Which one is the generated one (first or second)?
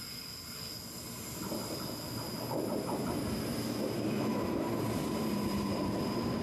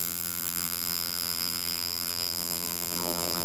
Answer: second